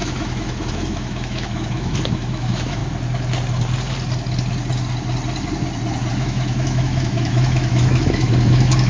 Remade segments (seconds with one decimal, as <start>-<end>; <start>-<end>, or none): 0.0-2.8; 6.1-8.9